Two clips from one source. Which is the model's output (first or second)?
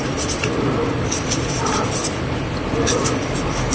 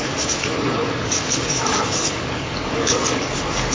second